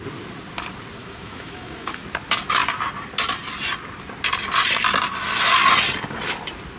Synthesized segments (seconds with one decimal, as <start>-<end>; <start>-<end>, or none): 1.0-2.0